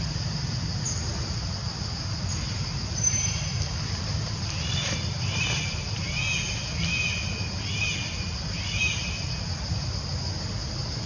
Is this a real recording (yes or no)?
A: yes